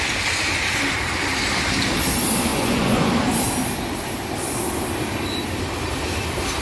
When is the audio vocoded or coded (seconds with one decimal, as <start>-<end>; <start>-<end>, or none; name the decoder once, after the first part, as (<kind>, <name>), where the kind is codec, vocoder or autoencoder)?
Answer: 2.5-3.1 (vocoder, Vocos)